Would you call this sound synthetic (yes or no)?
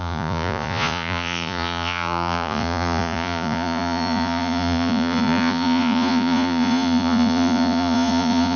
yes